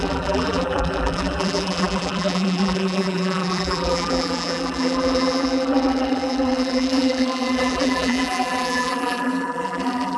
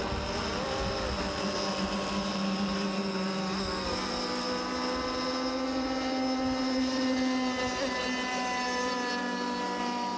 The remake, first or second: first